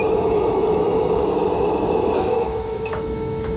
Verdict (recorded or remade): remade